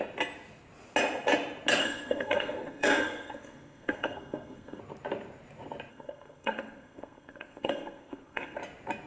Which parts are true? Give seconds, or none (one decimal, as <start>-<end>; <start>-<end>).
0.0-1.8; 4.8-5.9; 8.6-9.1